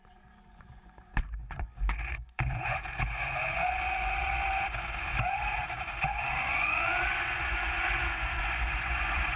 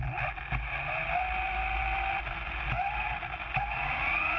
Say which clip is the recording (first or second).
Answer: second